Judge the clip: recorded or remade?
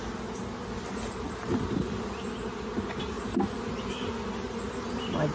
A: recorded